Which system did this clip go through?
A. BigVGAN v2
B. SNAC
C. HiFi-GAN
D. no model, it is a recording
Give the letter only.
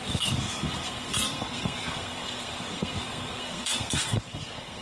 B